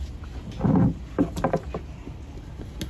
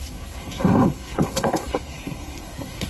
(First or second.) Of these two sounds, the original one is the first